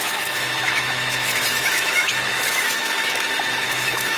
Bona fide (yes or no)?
no